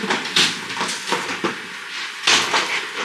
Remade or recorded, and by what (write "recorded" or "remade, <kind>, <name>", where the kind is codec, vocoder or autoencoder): recorded